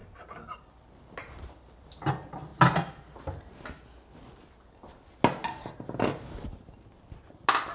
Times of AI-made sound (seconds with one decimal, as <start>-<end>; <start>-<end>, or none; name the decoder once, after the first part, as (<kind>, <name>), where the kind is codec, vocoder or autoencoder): none